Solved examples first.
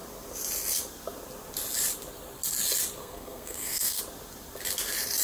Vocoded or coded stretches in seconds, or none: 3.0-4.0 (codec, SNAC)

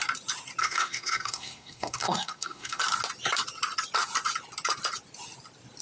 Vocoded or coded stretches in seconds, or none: 0.6-2.8 (codec, SNAC)

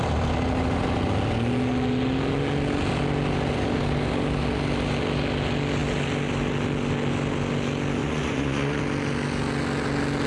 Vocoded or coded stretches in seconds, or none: 8.0-8.8 (vocoder, Vocos)

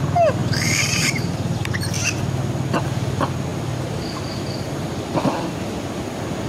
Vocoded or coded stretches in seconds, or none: 0.4-1.7 (vocoder, BigVGAN v2); 3.5-4.7

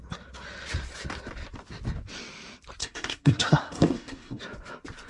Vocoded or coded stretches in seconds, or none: 2.8-4.4 (codec, SNAC)

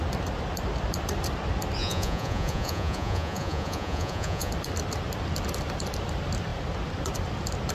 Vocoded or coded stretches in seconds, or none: 1.8-4.5 (vocoder, Vocos)

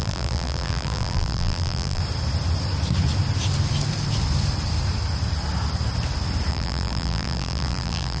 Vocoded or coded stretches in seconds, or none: 0.0-2.0 (vocoder, BigVGAN v2); 6.5-8.2

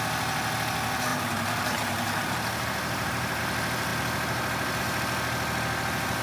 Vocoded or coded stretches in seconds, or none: 1.1-3.4 (vocoder, BigVGAN v2)